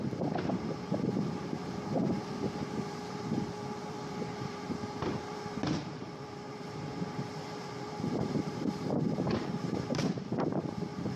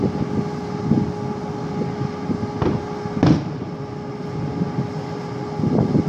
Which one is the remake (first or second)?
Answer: first